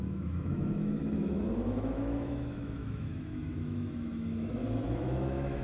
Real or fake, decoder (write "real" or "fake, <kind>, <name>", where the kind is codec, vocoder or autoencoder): fake, autoencoder, DAC-VAE